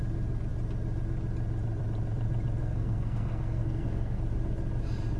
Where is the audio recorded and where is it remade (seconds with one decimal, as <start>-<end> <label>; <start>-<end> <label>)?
0.0-2.6 recorded; 2.6-4.2 remade; 4.2-5.2 recorded